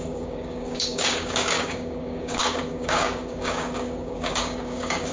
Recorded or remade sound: remade